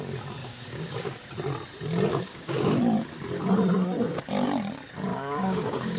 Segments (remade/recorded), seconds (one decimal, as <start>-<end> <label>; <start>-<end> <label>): 0.0-0.4 recorded; 0.4-1.3 remade; 1.3-2.1 recorded; 2.1-2.8 remade; 2.8-5.1 recorded; 5.1-6.0 remade